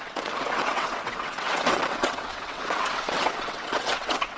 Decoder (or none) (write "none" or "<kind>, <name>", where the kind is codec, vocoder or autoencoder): vocoder, WaveNeXt